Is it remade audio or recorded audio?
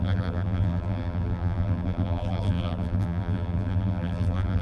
remade